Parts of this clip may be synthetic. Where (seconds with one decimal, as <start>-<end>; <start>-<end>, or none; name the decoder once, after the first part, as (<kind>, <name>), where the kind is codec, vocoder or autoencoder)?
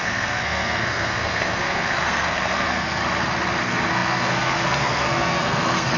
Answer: 0.0-3.0 (codec, SNAC); 3.6-6.0